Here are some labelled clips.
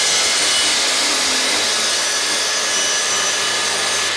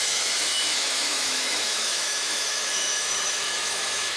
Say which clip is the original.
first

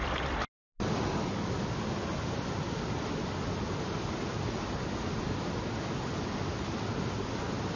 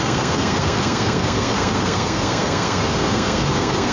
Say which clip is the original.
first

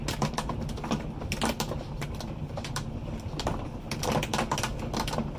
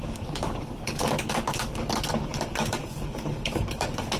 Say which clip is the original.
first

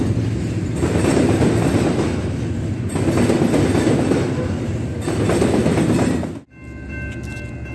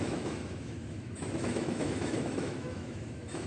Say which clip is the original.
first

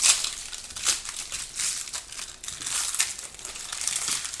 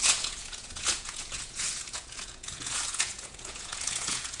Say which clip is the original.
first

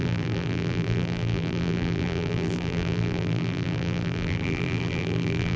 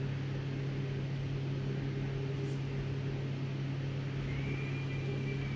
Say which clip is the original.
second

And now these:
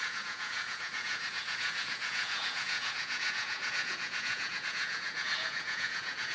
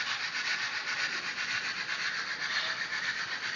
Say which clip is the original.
second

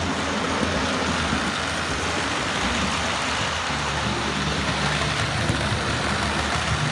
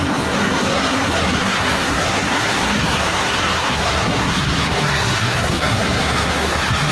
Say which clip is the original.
first